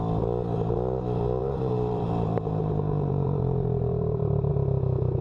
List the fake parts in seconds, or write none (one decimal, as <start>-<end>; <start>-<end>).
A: 1.4-4.5